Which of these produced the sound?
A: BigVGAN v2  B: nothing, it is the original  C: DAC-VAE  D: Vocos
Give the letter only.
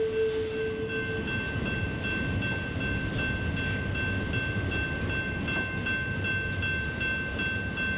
B